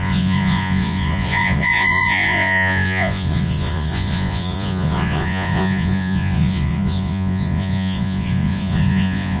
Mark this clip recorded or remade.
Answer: remade